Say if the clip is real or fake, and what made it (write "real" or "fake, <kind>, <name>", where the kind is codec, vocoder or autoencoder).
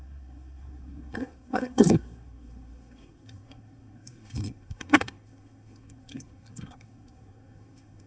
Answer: fake, codec, SNAC